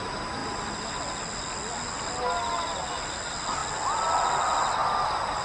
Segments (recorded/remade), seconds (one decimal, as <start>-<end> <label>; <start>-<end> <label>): 0.0-5.4 recorded